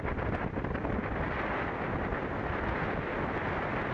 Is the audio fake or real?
real